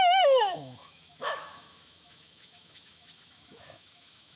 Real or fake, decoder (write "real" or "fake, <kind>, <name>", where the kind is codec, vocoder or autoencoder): fake, autoencoder, DAC-VAE